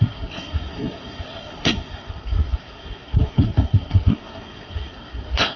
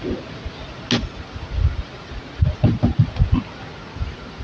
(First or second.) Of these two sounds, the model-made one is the first